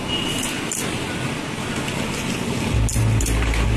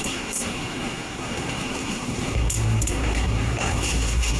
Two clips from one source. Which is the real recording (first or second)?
first